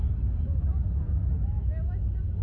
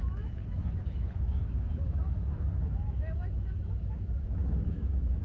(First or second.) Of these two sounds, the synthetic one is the second